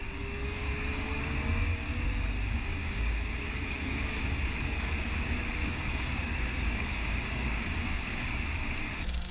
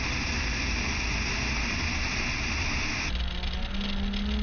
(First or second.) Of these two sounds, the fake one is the first